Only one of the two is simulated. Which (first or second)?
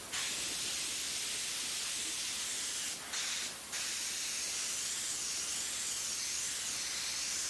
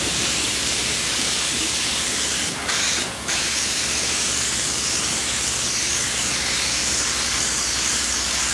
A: second